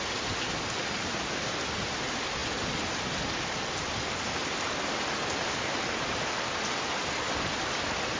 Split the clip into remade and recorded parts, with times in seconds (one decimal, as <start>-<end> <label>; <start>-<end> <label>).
0.0-8.2 recorded